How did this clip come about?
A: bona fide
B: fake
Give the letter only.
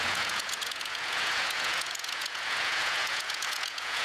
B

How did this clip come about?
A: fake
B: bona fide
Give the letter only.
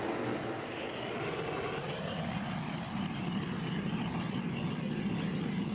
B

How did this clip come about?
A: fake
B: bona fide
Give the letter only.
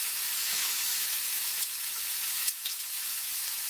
A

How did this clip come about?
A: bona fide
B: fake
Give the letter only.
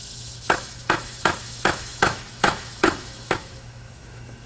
B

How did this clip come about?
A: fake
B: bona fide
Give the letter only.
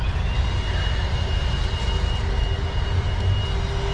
B